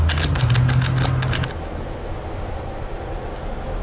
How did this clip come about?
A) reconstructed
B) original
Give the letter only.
B